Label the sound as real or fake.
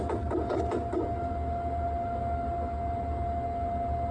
real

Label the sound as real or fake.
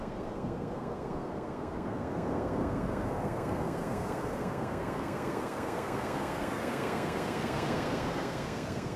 fake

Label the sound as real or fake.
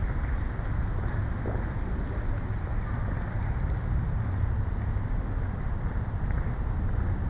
real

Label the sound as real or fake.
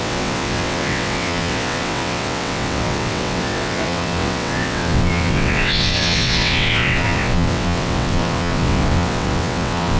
fake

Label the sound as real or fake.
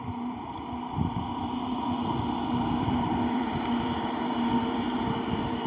fake